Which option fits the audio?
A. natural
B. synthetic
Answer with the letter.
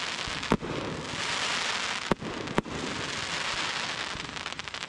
A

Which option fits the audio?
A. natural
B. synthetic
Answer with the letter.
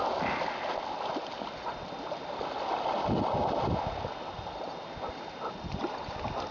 A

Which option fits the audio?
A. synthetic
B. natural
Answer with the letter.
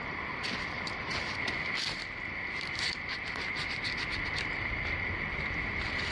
B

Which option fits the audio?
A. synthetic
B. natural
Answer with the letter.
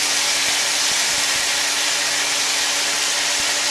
B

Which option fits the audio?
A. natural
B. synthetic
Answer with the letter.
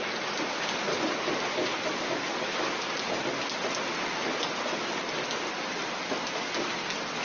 A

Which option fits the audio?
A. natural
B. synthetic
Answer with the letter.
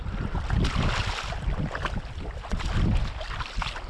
A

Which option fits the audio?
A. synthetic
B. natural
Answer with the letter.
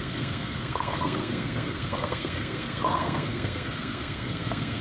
A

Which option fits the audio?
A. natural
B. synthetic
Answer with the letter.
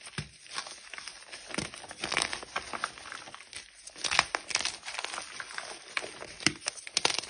A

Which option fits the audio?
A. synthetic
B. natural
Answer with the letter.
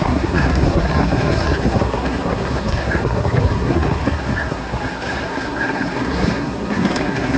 A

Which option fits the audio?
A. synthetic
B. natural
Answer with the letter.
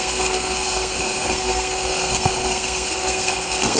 A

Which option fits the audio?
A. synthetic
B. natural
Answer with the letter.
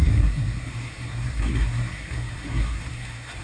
A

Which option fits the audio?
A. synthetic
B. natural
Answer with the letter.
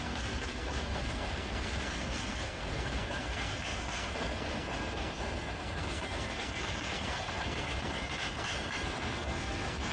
A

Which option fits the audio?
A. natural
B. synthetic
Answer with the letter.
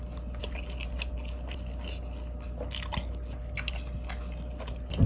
A